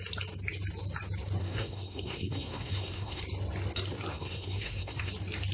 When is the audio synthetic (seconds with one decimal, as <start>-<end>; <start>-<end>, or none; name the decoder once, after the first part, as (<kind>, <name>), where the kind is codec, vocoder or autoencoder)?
1.4-3.2 (codec, SNAC); 4.1-5.1